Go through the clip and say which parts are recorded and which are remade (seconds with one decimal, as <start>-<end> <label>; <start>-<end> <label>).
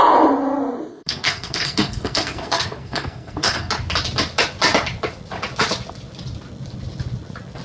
0.0-0.9 recorded; 0.9-3.7 remade; 3.7-7.6 recorded